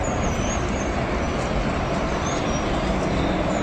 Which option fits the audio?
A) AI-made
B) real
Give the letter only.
B